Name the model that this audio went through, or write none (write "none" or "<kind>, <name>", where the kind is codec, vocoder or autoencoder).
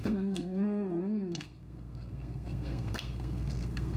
codec, SNAC